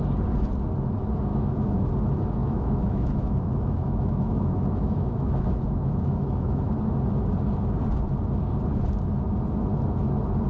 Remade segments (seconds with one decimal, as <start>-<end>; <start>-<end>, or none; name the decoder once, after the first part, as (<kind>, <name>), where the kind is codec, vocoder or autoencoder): 1.3-1.9 (autoencoder, DAC-VAE); 2.4-6.7